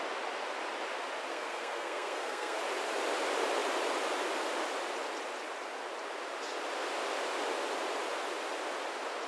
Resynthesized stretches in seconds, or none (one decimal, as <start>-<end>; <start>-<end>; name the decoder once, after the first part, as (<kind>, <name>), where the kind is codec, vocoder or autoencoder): 1.3-2.6 (codec, SNAC)